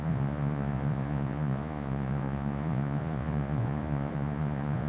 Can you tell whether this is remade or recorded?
remade